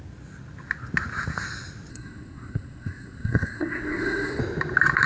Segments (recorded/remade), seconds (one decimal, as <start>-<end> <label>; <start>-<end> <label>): 0.0-1.9 recorded; 1.9-4.4 remade; 4.4-5.1 recorded